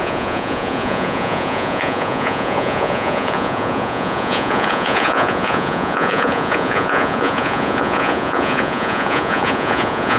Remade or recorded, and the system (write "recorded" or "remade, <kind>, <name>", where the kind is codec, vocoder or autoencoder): remade, vocoder, Vocos